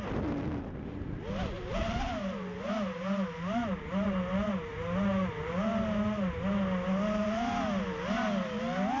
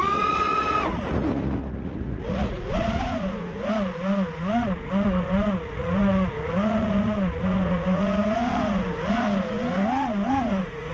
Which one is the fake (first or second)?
second